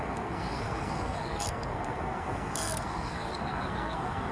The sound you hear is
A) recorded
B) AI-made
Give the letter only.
B